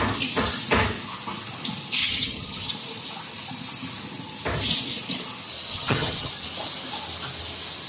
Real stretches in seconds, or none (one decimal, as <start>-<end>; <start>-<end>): 0.0-2.0; 2.7-5.7; 6.3-7.9

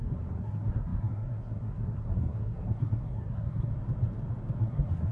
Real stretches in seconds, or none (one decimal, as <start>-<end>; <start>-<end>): 3.7-4.6

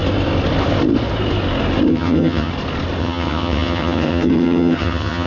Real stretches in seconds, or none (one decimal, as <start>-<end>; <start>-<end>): 0.0-1.9; 2.5-3.0

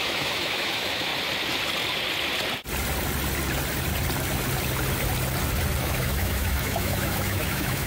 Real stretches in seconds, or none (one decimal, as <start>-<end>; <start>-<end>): 1.1-5.8

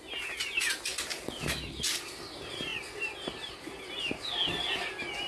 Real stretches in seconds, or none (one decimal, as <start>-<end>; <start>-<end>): 0.0-5.3

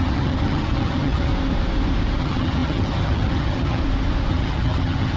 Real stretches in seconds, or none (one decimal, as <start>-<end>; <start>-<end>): 1.3-2.2; 3.8-4.3

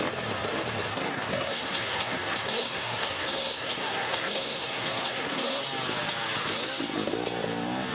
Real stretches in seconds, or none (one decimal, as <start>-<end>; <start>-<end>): 0.0-0.9; 5.6-7.9